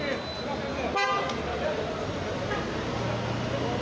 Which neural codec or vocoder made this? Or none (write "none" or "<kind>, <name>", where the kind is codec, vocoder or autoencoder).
none